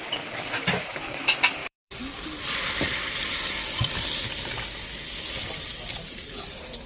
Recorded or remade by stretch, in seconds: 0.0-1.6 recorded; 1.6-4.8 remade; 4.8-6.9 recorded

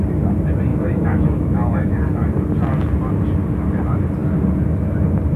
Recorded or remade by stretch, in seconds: 0.0-0.7 recorded; 0.7-1.9 remade; 1.9-5.4 recorded

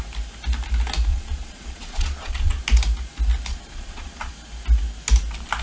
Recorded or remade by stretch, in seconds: 0.0-1.1 recorded; 1.1-2.6 remade; 2.6-3.5 recorded; 3.5-4.3 remade; 4.3-5.6 recorded

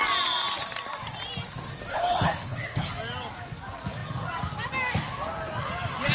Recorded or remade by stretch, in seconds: 0.0-1.9 recorded; 1.9-2.9 remade; 2.9-6.1 recorded